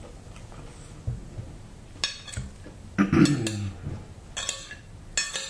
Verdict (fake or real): real